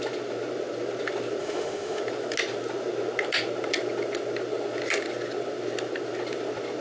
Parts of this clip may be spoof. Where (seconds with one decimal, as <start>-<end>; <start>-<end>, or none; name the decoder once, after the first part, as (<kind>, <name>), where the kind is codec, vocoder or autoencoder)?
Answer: 1.4-2.0 (autoencoder, DAC-VAE)